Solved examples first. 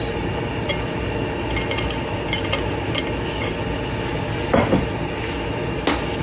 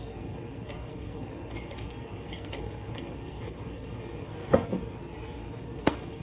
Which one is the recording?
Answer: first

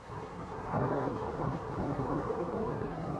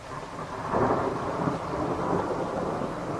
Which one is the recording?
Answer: second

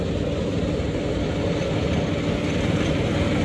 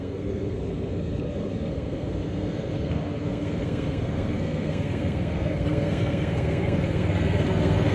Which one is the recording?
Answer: first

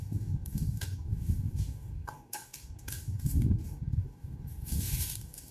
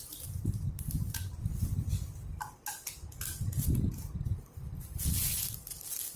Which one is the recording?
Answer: second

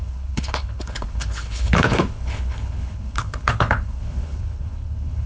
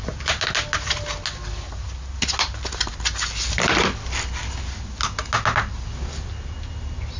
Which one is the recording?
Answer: second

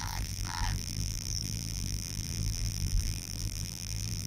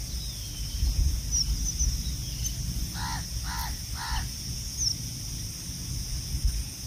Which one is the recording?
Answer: second